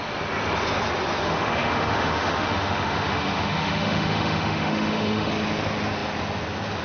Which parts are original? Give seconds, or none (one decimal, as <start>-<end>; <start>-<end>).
0.0-1.2; 5.3-6.8

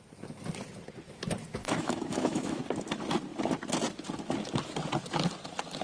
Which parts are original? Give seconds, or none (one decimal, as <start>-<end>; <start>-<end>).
0.0-1.6; 2.6-5.8

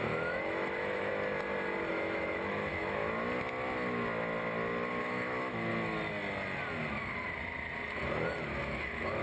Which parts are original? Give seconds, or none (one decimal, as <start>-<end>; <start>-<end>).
1.1-1.9; 3.0-5.0; 5.7-8.6

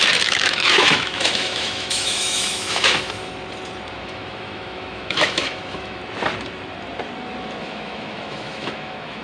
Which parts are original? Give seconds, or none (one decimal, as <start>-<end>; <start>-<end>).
3.3-3.9; 6.0-7.6

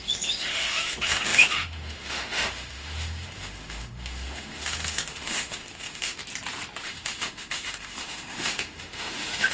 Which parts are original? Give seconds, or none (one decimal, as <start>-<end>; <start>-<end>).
6.2-6.8

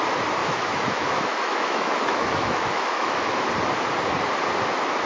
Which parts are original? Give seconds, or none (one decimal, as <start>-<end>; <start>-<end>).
0.0-0.4; 3.5-5.1